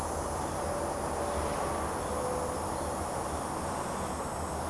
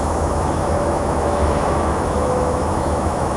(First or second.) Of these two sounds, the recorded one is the first